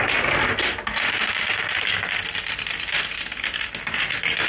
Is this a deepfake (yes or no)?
no